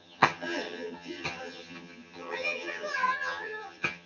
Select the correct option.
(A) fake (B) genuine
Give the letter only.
A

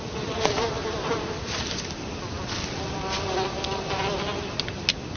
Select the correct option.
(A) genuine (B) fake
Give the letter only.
A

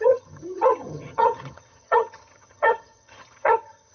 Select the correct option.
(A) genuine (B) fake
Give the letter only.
B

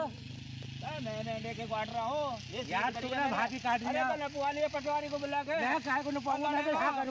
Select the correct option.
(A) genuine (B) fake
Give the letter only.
A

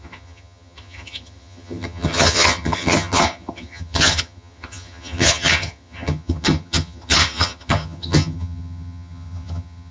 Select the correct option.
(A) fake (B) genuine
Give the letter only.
A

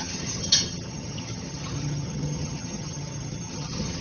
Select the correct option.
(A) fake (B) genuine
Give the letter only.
A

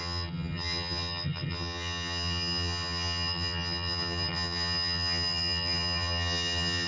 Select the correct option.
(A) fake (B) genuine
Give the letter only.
A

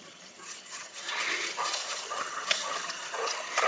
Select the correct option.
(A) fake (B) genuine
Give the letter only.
A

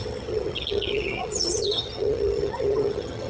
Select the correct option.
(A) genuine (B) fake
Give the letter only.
B